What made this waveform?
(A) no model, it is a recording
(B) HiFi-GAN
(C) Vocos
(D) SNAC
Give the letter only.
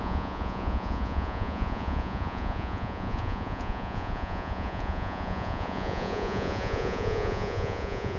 C